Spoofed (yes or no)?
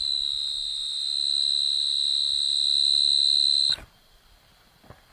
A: no